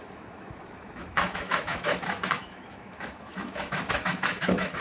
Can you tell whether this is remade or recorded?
remade